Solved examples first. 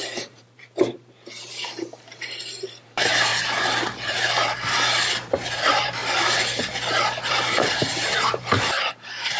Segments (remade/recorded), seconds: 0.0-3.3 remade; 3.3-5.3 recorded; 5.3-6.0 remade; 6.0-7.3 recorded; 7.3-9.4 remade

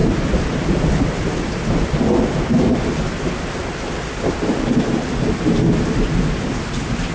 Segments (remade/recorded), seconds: 0.0-7.1 recorded

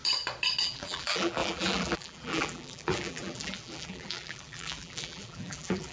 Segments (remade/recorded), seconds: 0.0-0.6 recorded; 0.6-5.9 remade

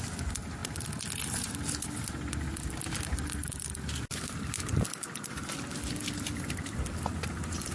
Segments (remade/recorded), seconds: 0.0-7.7 recorded

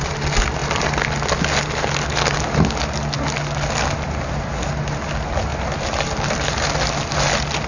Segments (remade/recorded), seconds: 0.0-5.5 recorded; 5.5-7.1 remade; 7.1-7.7 recorded

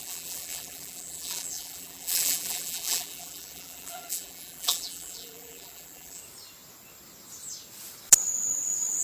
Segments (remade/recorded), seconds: 0.0-6.2 remade; 6.2-9.0 recorded

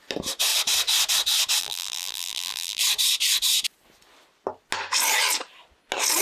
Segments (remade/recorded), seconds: 0.0-1.6 recorded; 1.6-2.8 remade; 2.8-6.2 recorded

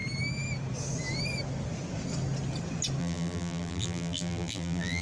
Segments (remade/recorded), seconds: 0.0-3.0 recorded; 3.0-5.0 remade